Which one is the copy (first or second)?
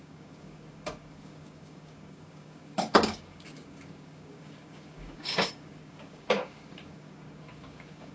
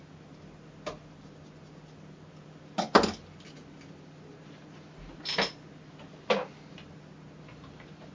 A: first